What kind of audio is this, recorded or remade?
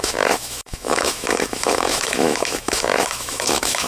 remade